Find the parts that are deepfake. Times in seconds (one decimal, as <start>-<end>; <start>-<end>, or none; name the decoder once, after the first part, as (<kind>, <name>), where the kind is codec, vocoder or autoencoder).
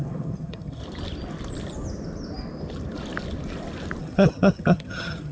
0.0-0.8 (vocoder, HiFi-GAN); 4.0-5.3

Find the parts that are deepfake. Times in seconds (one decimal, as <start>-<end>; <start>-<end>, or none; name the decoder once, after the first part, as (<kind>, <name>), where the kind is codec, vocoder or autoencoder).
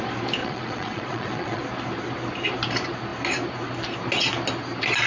0.4-1.6 (vocoder, Vocos)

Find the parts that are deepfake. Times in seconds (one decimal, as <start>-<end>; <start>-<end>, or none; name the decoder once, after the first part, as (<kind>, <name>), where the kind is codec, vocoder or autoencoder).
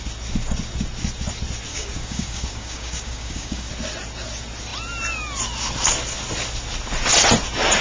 1.7-3.7 (codec, DAC)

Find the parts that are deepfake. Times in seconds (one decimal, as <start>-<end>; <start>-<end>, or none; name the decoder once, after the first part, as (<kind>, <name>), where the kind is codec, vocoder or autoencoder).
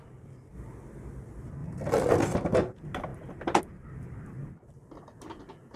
none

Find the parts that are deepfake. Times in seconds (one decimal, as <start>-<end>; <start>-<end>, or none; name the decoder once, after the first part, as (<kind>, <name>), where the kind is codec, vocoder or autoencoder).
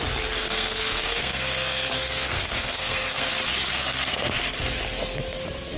0.4-3.3 (codec, SNAC); 3.7-4.4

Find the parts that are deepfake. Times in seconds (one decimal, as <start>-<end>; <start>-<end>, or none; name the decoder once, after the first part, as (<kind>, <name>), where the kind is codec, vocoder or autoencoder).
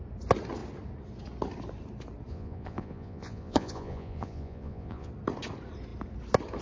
2.3-5.1 (vocoder, Vocos)